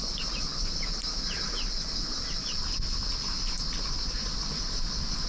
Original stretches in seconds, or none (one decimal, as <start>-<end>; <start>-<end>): 0.0-5.3